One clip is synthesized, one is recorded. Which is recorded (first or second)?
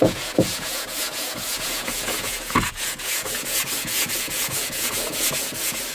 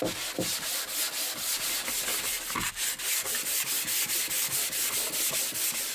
second